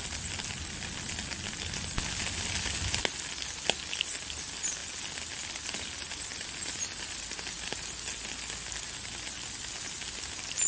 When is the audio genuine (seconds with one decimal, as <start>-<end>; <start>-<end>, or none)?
0.0-10.7